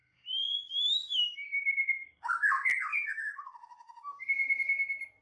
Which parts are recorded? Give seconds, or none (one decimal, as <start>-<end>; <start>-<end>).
2.3-2.9; 4.2-5.2